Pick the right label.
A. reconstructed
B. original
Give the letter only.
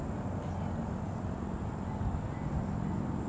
B